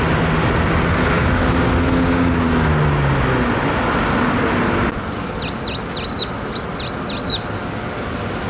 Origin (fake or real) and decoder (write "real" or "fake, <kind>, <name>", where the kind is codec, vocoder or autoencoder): real